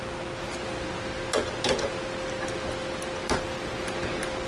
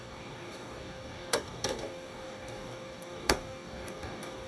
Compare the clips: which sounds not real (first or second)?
second